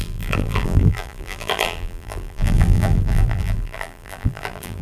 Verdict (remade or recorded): remade